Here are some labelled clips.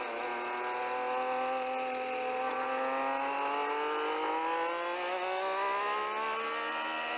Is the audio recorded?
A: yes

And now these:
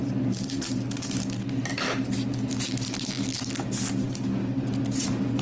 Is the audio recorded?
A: yes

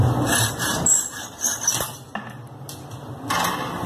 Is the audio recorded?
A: yes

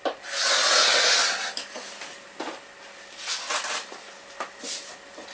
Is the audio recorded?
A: yes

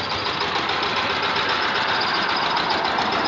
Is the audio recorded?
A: yes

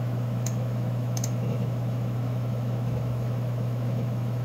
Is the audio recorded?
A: no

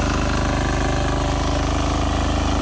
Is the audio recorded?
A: yes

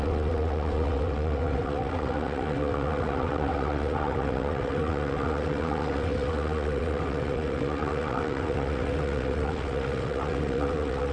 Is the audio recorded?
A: no